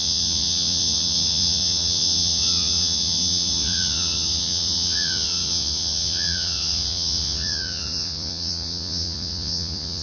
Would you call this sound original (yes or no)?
no